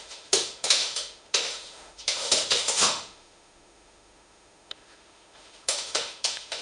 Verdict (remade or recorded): remade